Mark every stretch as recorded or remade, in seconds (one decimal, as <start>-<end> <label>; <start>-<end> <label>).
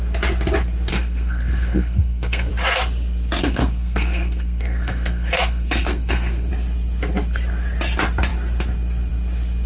0.0-0.9 recorded; 0.9-2.5 remade; 2.5-3.4 recorded; 3.4-6.5 remade; 6.5-9.7 recorded